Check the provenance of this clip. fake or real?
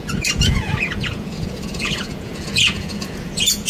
fake